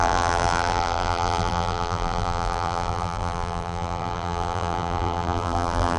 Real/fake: fake